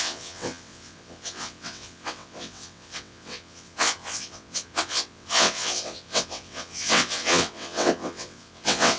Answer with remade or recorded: remade